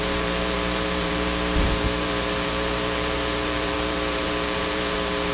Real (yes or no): no